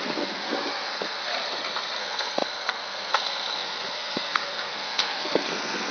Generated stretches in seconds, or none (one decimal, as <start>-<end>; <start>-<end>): 0.0-1.3; 2.0-5.9